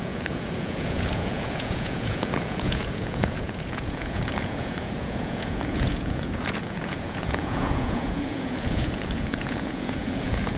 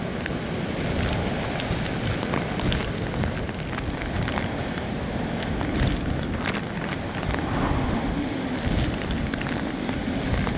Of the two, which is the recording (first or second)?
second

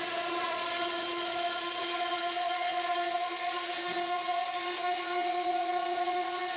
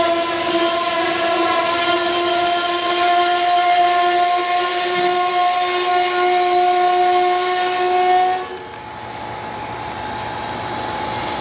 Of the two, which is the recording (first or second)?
second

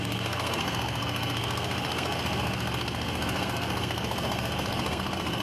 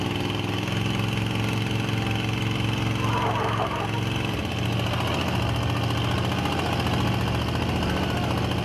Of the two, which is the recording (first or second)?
second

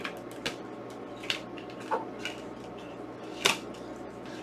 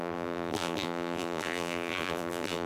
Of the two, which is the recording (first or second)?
first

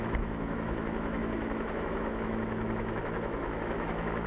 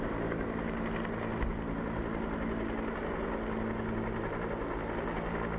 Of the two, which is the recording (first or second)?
second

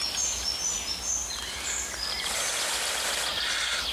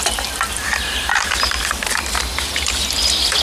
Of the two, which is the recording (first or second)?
first